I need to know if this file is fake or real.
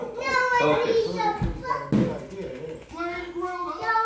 real